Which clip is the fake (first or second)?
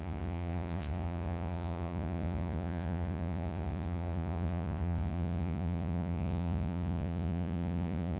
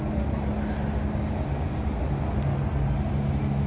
first